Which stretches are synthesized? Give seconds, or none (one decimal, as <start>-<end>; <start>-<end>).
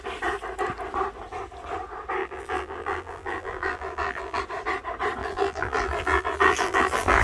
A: 2.2-4.4; 5.2-7.2